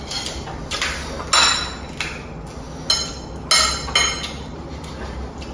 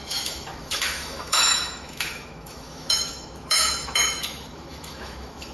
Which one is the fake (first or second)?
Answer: second